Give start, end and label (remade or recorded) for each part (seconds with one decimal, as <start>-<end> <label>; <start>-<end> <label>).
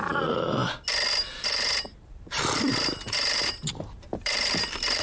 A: 0.0-0.6 remade; 0.6-1.1 recorded; 1.1-5.0 remade